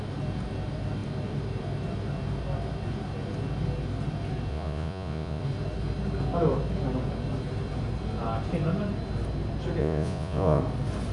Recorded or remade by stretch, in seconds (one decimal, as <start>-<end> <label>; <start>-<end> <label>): 0.0-4.5 recorded; 4.5-5.4 remade; 5.4-9.8 recorded; 9.8-10.6 remade; 10.6-11.1 recorded